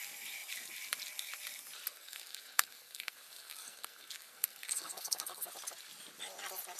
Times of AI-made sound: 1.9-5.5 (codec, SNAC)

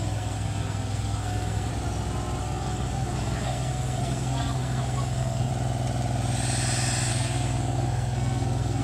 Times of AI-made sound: 0.0-1.7 (codec, SNAC); 2.4-5.5; 7.1-8.8

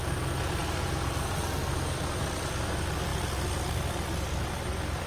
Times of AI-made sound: none

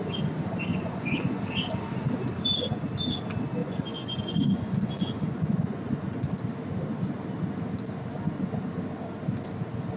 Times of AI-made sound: 0.7-1.4 (vocoder, Vocos); 3.6-6.3

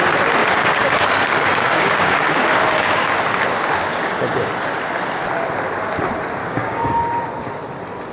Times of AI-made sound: 0.4-3.1 (codec, DAC); 3.9-4.5; 6.4-7.0